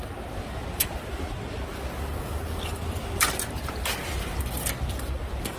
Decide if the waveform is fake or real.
real